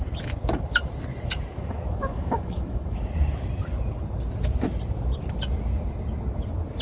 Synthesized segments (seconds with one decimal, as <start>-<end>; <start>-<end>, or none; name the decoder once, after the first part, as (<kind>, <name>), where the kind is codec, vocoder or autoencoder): 1.1-3.0 (autoencoder, DAC-VAE)